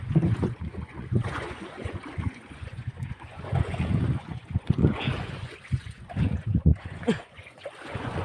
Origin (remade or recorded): remade